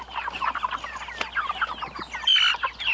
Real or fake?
real